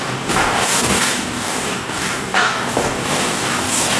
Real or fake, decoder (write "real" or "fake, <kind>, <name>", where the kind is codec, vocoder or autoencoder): fake, codec, DAC